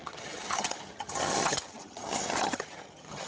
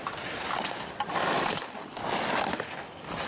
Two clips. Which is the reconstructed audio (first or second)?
first